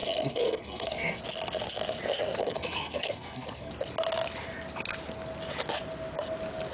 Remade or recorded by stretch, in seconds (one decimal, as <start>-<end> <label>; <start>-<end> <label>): 0.0-1.2 remade; 1.2-2.4 recorded; 2.4-3.7 remade; 3.7-6.7 recorded